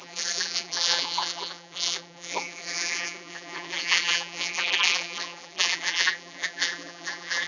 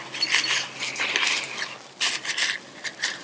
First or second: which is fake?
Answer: first